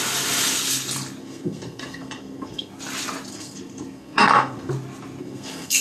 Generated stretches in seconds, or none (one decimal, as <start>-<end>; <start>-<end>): 1.2-2.7; 3.3-4.7; 5.2-5.8